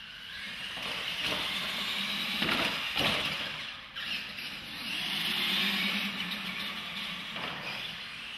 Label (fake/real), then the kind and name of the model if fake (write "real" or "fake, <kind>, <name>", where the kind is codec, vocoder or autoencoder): real